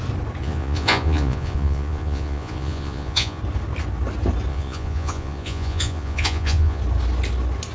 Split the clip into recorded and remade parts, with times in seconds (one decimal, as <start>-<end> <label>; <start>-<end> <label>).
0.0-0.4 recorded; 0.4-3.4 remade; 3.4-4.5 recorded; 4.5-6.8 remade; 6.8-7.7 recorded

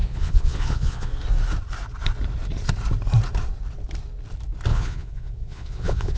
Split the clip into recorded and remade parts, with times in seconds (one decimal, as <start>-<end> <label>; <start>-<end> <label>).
0.0-1.1 remade; 1.1-4.7 recorded; 4.7-6.2 remade

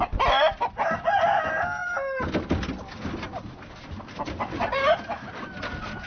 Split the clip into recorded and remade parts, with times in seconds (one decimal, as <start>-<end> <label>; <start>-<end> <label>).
0.0-6.1 recorded

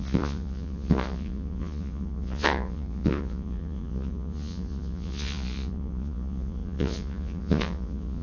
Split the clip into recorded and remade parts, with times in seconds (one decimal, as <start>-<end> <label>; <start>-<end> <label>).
0.0-8.2 remade

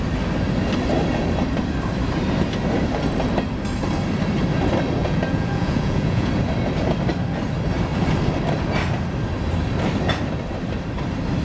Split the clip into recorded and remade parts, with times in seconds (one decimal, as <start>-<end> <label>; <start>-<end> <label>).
0.0-5.0 recorded; 5.0-6.3 remade; 6.3-11.4 recorded

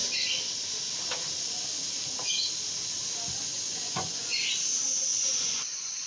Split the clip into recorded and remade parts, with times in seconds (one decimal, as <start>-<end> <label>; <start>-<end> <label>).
0.0-3.4 recorded; 3.4-4.4 remade; 4.4-5.1 recorded; 5.1-6.1 remade

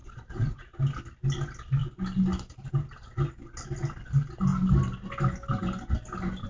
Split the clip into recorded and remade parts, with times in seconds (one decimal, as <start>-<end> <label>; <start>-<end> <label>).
0.0-0.6 remade; 0.6-6.5 recorded

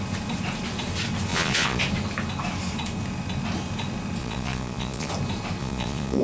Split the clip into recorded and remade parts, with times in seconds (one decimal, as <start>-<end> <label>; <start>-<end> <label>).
0.0-1.3 recorded; 1.3-1.8 remade; 1.8-4.2 recorded; 4.2-5.1 remade; 5.1-5.6 recorded; 5.6-6.2 remade